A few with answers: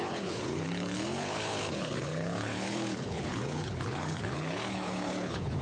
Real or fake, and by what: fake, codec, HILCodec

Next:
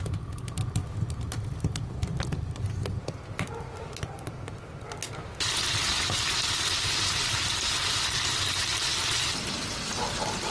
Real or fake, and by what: real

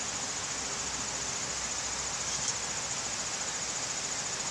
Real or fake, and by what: real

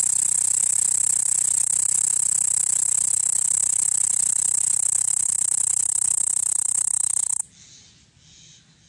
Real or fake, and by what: real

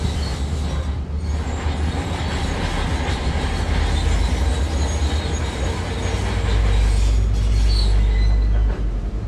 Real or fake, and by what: real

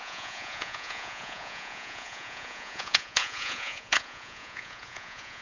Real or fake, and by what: fake, vocoder, Vocos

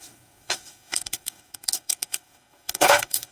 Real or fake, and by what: fake, codec, DAC